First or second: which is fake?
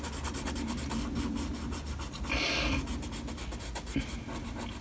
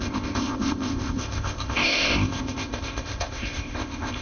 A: second